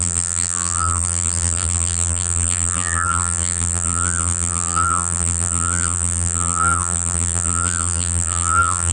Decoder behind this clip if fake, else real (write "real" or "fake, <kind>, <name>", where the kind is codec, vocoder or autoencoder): fake, vocoder, BigVGAN v2